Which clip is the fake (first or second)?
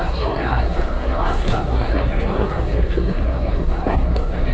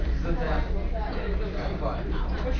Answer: first